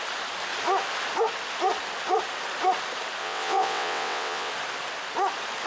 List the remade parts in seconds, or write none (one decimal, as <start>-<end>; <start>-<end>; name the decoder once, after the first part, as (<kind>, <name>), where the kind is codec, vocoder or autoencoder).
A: 3.2-4.5 (vocoder, WaveNeXt)